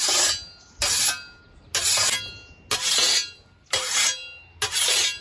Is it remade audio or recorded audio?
recorded